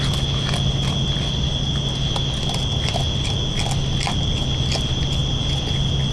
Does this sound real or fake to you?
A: real